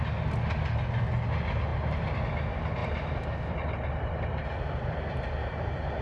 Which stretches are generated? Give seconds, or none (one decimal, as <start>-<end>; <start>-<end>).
1.7-2.3; 2.8-5.1

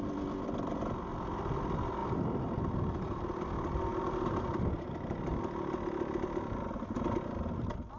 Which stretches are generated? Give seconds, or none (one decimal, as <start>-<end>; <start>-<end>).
none